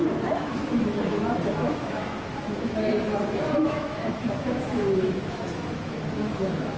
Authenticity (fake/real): fake